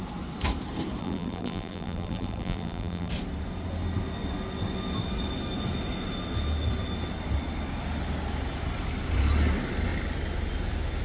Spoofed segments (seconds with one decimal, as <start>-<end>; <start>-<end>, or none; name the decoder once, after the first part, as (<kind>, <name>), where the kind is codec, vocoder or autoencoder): 1.0-3.1 (vocoder, BigVGAN v2)